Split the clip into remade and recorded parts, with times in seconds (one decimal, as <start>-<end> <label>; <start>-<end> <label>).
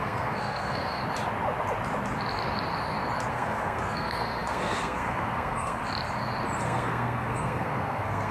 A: 0.0-1.0 remade; 1.0-3.3 recorded; 3.3-5.8 remade; 5.8-6.6 recorded; 6.6-8.3 remade